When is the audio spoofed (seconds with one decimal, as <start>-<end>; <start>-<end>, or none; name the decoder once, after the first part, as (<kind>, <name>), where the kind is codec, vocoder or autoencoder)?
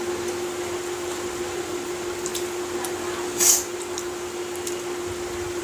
none